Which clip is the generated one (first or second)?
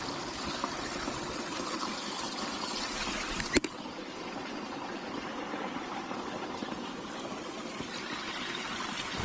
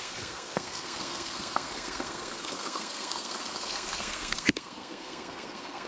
second